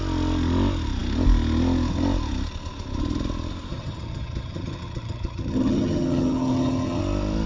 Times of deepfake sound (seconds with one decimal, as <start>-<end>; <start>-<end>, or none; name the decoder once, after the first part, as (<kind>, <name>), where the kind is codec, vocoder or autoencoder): 3.7-7.0 (vocoder, HiFi-GAN)